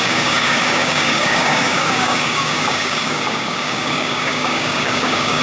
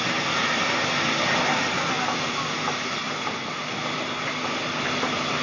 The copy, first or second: first